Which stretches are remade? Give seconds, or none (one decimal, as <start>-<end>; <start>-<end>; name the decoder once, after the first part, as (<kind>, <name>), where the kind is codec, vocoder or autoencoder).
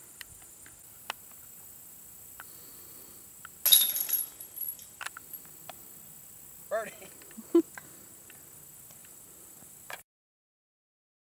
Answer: 9.0-10.8 (vocoder, BigVGAN v2)